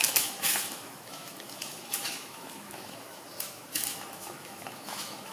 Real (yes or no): no